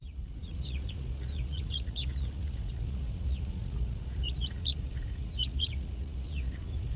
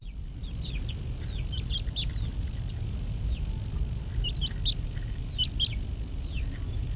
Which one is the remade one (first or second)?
first